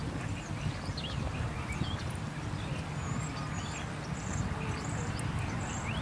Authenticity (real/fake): real